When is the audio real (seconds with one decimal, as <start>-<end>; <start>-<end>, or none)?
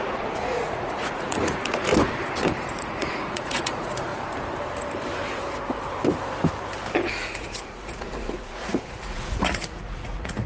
1.9-2.6; 4.1-7.1